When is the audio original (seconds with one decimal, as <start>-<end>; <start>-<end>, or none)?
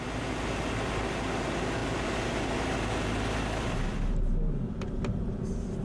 0.0-5.8